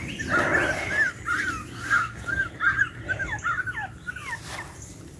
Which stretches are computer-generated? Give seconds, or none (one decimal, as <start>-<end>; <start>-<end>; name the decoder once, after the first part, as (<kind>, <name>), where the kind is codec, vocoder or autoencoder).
1.6-2.5 (codec, DAC)